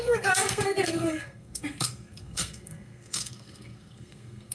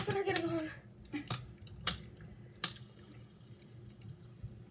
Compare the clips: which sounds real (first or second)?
second